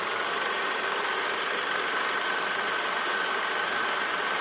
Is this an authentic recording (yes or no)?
yes